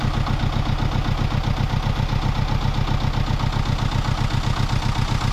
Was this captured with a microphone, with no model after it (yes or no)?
yes